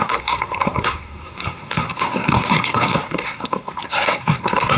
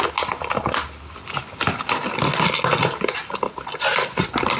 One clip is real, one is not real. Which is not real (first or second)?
first